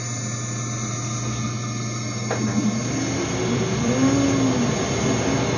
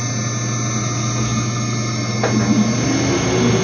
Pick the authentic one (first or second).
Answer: second